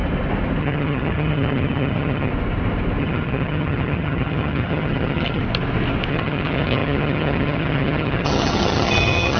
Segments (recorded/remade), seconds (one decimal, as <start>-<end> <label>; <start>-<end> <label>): 0.0-0.6 recorded; 0.6-2.3 remade; 2.3-3.0 recorded; 3.0-5.4 remade; 5.4-6.1 recorded; 6.1-9.4 remade